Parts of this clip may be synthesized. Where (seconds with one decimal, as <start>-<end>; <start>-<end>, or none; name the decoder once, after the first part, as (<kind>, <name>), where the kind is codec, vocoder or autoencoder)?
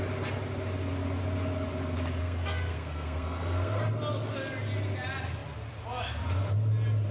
2.2-3.8 (codec, SNAC)